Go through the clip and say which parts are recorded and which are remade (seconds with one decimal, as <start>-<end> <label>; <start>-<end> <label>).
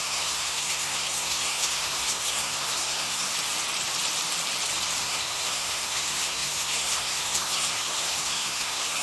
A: 0.0-3.3 remade; 3.3-5.0 recorded; 5.0-9.0 remade